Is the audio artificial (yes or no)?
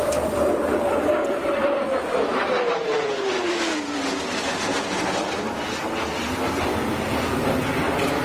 no